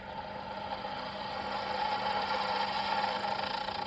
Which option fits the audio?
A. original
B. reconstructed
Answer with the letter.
A